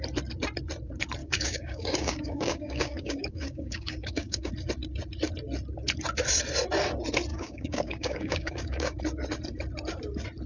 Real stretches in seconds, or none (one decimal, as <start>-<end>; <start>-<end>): 0.0-1.2; 4.5-7.3; 9.0-10.5